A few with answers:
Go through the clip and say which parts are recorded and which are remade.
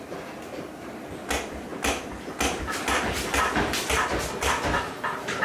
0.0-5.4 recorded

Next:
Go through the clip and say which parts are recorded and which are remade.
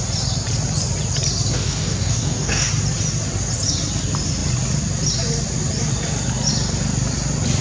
0.0-1.5 recorded; 1.5-2.7 remade; 2.7-7.6 recorded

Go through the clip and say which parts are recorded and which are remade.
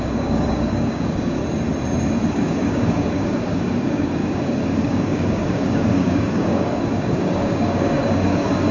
0.0-1.4 remade; 1.4-2.3 recorded; 2.3-8.7 remade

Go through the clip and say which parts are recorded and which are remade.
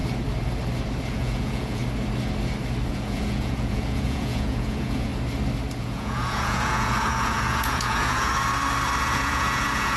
0.0-1.1 recorded; 1.1-1.8 remade; 1.8-2.9 recorded; 2.9-5.1 remade; 5.1-5.8 recorded; 5.8-8.3 remade; 8.3-9.0 recorded; 9.0-10.0 remade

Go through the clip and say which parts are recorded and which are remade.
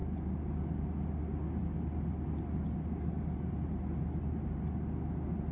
0.0-5.5 recorded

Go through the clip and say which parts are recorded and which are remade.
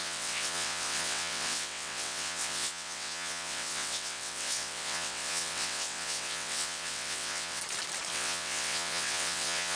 0.0-7.6 remade; 7.6-8.1 recorded; 8.1-9.8 remade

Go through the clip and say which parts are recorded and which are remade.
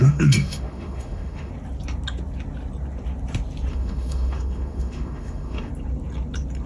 0.0-1.5 remade; 1.5-3.7 recorded; 3.7-5.7 remade; 5.7-6.7 recorded